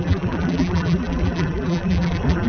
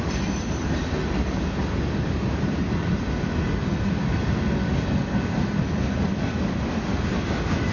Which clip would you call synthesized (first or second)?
first